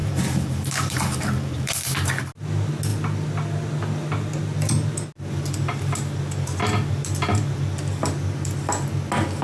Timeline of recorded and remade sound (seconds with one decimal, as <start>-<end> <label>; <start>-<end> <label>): 0.0-2.1 remade; 2.1-9.4 recorded